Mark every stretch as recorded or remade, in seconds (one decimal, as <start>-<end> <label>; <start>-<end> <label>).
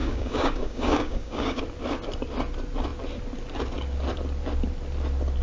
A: 0.0-1.6 remade; 1.6-5.4 recorded